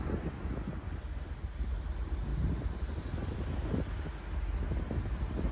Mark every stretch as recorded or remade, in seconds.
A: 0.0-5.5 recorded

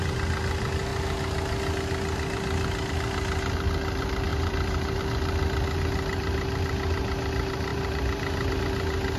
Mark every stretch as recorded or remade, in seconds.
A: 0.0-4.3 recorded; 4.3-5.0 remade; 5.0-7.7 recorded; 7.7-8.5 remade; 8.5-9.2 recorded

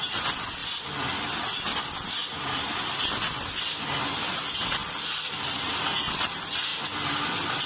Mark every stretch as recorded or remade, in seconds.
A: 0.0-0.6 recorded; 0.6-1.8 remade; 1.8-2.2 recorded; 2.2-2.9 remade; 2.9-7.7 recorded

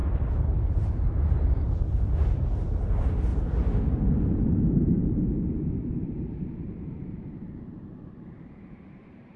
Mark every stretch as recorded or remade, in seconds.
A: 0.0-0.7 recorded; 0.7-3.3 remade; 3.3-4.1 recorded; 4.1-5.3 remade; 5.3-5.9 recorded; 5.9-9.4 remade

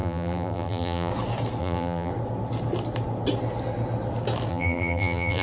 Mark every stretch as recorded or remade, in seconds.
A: 0.0-1.1 remade; 1.1-1.6 recorded; 1.6-2.1 remade; 2.1-4.5 recorded; 4.5-5.4 remade

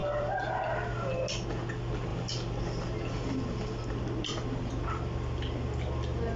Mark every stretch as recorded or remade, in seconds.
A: 0.0-0.6 remade; 0.6-2.1 recorded; 2.1-4.7 remade; 4.7-6.4 recorded